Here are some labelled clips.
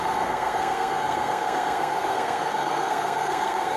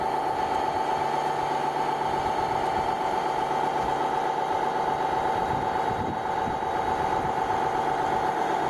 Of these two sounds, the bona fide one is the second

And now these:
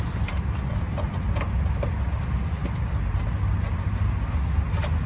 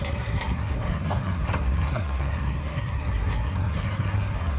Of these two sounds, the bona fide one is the first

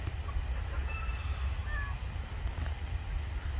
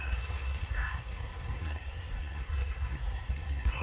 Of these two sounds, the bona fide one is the first